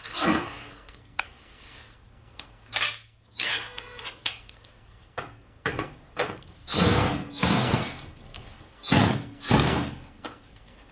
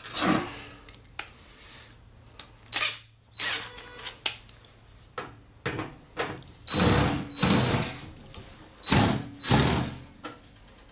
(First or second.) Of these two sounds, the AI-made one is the first